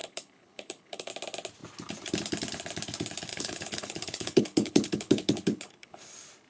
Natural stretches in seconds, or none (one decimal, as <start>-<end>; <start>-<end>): 1.1-3.3; 6.1-6.5